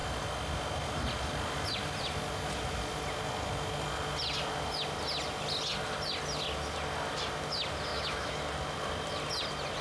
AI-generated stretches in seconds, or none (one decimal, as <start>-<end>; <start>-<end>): 7.9-8.4